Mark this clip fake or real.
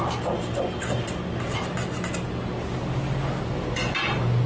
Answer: real